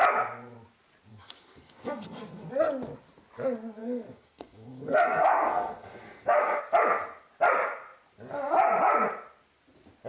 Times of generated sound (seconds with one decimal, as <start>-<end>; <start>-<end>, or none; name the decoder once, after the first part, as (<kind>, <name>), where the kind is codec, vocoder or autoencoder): 1.1-2.5 (codec, SNAC); 3.8-6.6